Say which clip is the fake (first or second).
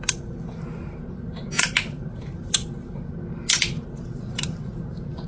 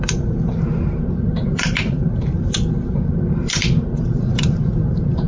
second